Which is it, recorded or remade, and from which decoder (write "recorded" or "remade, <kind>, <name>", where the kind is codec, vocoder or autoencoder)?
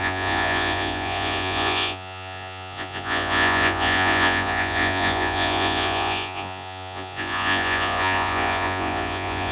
remade, vocoder, Vocos